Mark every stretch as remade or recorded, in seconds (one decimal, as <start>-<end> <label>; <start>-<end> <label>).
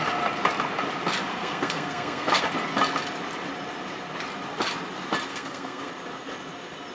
0.0-1.3 recorded; 1.3-2.4 remade; 2.4-5.3 recorded; 5.3-5.9 remade; 5.9-6.9 recorded